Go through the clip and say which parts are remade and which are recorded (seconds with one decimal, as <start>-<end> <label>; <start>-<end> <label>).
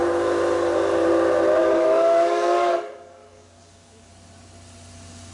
0.0-1.6 recorded; 1.6-4.1 remade; 4.1-5.3 recorded